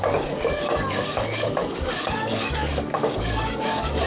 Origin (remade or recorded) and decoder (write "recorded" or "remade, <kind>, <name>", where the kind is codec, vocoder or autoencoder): remade, codec, DAC